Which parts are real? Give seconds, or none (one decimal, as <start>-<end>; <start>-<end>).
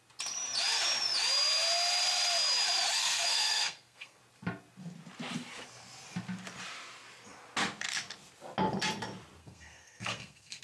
0.0-3.0; 4.2-9.4